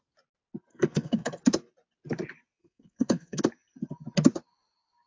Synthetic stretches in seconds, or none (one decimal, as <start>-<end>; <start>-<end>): 0.7-1.4; 2.6-3.4